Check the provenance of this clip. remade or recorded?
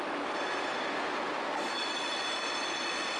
recorded